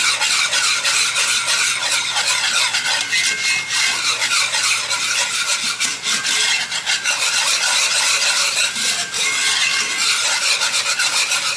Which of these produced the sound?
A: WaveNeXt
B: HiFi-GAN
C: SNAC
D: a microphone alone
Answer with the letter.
D